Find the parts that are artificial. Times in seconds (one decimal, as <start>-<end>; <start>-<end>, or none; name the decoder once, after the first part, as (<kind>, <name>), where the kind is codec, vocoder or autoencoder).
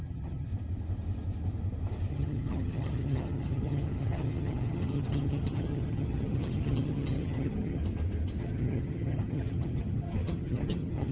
0.0-0.5 (vocoder, HiFi-GAN); 2.1-7.8; 8.4-11.1